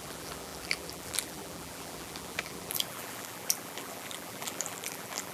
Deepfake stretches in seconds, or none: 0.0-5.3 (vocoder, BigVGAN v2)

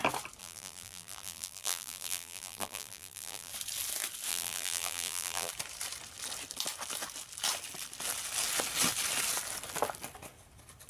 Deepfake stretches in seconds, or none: 0.4-3.5 (vocoder, BigVGAN v2); 4.3-5.5

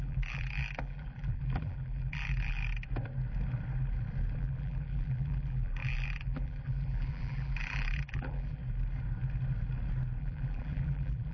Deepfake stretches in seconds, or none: 0.0-2.6 (vocoder, BigVGAN v2); 4.4-8.6; 10.2-11.3

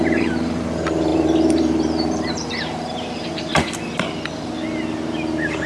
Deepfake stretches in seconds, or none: 0.0-3.5 (vocoder, BigVGAN v2)

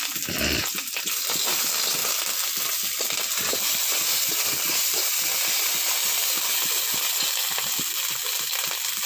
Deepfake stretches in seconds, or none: none